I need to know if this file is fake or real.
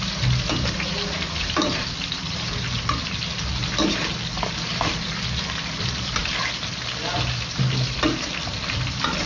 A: real